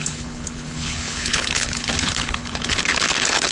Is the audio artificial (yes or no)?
yes